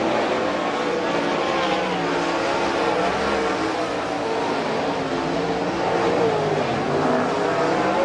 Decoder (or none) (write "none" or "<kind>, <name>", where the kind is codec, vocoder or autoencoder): none